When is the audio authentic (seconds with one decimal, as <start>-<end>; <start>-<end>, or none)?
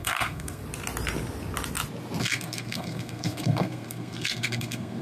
0.6-2.2